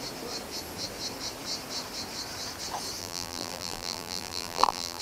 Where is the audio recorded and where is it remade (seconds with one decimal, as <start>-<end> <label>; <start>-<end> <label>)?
0.0-3.0 recorded; 3.0-5.0 remade